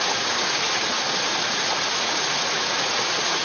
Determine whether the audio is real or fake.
fake